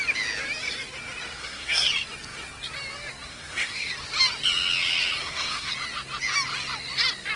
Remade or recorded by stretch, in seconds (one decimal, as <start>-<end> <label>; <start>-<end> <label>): 0.0-1.4 recorded; 1.4-1.9 remade; 1.9-3.3 recorded; 3.3-3.9 remade; 3.9-5.2 recorded; 5.2-5.7 remade; 5.7-7.4 recorded